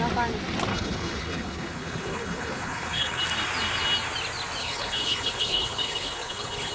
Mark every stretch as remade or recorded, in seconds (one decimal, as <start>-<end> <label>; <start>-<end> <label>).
0.0-0.7 recorded; 0.7-3.2 remade; 3.2-4.6 recorded; 4.6-6.7 remade